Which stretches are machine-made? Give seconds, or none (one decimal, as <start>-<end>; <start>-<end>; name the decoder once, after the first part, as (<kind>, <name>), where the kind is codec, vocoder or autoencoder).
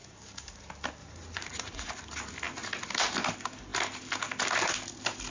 1.0-1.9 (vocoder, Vocos)